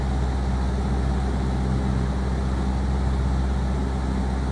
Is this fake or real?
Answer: real